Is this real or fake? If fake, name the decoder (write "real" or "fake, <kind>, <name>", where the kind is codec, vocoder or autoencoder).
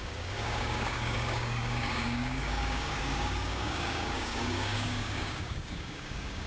fake, codec, DAC